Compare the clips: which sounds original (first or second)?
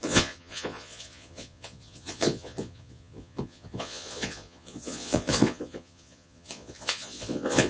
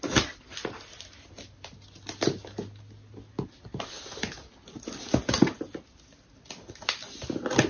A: second